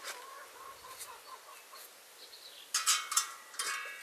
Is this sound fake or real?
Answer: real